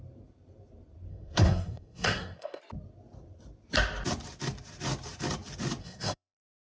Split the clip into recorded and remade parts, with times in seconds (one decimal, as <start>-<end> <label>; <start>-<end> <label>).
0.0-1.1 recorded; 1.1-2.6 remade; 2.6-5.8 recorded; 5.8-6.7 remade